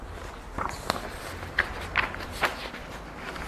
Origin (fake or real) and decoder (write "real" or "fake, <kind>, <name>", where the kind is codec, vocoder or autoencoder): real